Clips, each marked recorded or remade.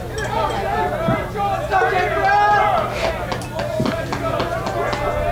recorded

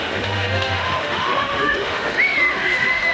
remade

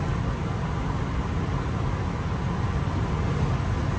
recorded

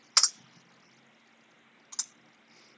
recorded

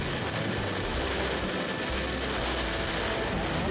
recorded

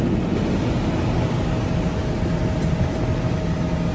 recorded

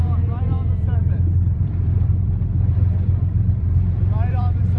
remade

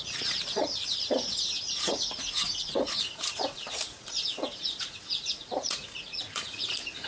remade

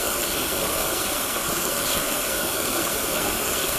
remade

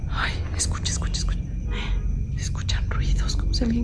recorded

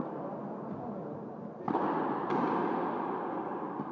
recorded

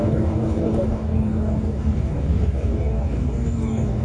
remade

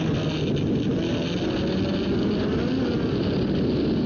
recorded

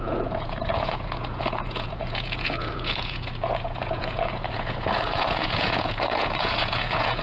remade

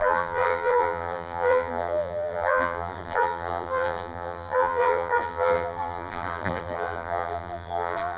remade